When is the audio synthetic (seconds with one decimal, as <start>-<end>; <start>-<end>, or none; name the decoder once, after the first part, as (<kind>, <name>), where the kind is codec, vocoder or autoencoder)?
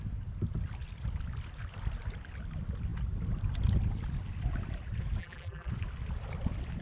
5.2-5.7 (vocoder, BigVGAN v2)